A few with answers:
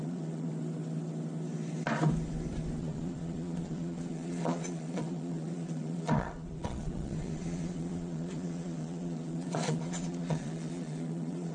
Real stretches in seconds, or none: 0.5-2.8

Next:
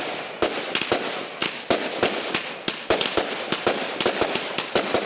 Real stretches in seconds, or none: 0.0-5.1

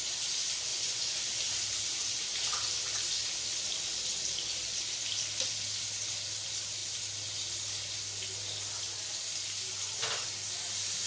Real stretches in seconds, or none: 0.0-0.7; 1.2-11.1

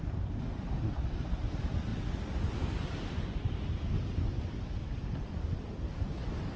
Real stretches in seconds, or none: 0.0-6.6